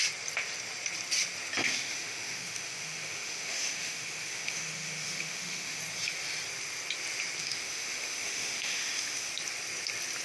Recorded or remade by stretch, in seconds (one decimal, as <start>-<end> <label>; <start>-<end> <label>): 0.0-1.6 recorded; 1.6-5.8 remade; 5.8-7.4 recorded; 7.4-9.3 remade; 9.3-10.2 recorded